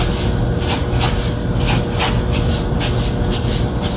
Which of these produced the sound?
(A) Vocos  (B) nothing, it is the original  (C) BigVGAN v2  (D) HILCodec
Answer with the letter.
B